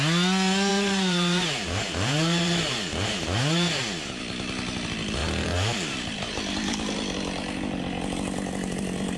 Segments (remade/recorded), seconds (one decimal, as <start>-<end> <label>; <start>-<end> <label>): 0.0-0.7 recorded; 0.7-4.2 remade; 4.2-5.2 recorded; 5.2-6.4 remade; 6.4-9.2 recorded